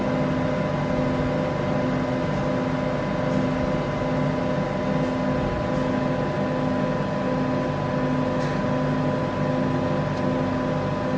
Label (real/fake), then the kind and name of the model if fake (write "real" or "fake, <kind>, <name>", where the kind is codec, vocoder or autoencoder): real